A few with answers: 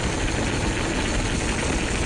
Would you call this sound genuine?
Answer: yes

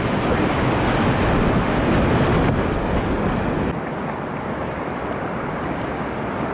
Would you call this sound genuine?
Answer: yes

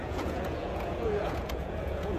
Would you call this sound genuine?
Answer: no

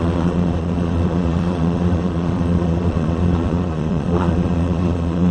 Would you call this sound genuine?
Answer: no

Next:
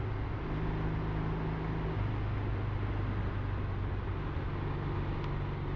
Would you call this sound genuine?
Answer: yes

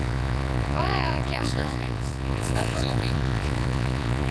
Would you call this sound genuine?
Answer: no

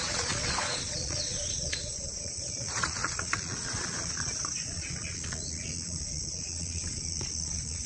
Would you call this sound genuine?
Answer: no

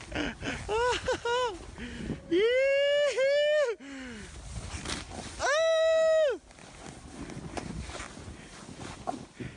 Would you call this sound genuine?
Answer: yes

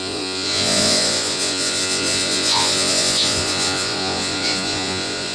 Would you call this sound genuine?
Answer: no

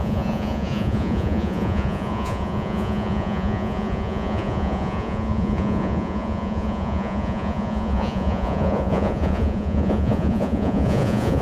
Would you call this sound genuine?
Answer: no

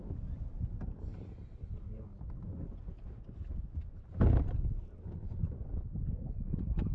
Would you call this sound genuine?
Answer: yes